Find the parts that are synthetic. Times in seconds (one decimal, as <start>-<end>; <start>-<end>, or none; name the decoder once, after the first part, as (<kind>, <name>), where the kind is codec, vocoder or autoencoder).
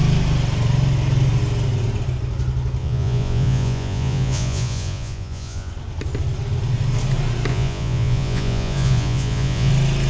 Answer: 2.8-5.7 (vocoder, Vocos); 7.5-9.7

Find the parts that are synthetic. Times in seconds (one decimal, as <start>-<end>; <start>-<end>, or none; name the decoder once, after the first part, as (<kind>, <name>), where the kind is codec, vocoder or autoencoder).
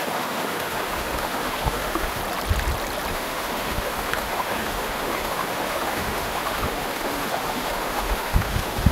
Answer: 0.0-2.2 (autoencoder, DAC-VAE); 3.1-8.9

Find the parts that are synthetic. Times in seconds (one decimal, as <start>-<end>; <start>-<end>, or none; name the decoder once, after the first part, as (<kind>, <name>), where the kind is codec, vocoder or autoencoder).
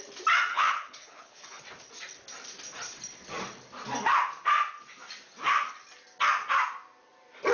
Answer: 0.5-1.6 (codec, HILCodec)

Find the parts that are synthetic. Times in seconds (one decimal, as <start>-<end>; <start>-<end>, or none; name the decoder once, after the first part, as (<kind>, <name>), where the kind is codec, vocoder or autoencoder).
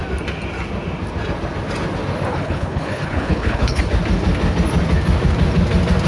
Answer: 2.3-3.8 (codec, HILCodec)